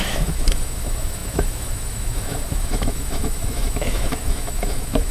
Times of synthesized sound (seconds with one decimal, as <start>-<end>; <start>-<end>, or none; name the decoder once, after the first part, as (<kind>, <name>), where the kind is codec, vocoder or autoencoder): 0.0-5.1 (autoencoder, DAC-VAE)